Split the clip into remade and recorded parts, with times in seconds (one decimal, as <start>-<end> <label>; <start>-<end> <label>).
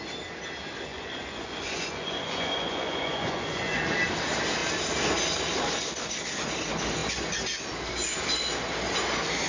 0.0-0.9 recorded; 0.9-3.8 remade; 3.8-9.5 recorded